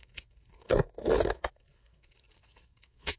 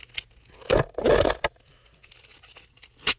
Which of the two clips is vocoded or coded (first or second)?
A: first